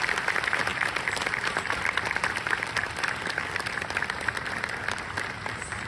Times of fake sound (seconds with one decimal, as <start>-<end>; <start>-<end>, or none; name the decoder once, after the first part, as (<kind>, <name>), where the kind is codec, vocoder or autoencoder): none